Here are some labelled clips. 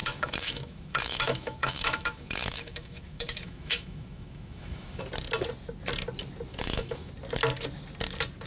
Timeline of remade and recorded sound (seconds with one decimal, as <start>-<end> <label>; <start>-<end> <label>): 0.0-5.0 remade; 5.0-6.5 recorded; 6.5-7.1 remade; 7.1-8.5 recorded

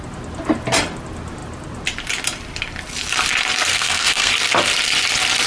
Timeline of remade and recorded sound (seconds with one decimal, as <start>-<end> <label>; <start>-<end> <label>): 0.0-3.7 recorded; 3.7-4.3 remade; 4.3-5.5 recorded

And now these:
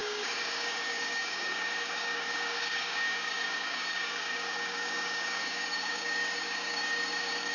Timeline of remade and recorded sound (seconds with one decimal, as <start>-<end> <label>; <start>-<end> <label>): 0.0-7.5 remade

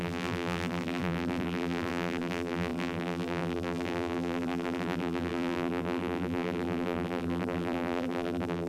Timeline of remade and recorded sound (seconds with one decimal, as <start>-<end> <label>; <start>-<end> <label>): 0.0-8.7 remade

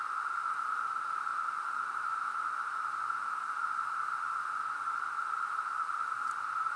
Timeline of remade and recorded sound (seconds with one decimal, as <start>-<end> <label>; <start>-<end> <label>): 0.0-0.9 recorded; 0.9-1.3 remade; 1.3-5.4 recorded; 5.4-6.8 remade

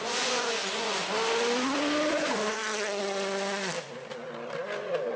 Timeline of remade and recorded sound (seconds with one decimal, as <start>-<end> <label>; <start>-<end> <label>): 0.0-1.0 remade; 1.0-2.1 recorded; 2.1-2.6 remade; 2.6-4.8 recorded; 4.8-5.2 remade

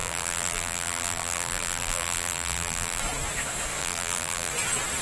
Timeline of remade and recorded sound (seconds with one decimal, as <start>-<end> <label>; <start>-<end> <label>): 0.0-3.0 remade; 3.0-3.8 recorded; 3.8-4.5 remade; 4.5-5.0 recorded